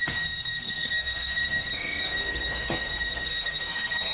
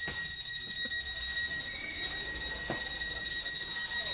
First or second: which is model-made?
first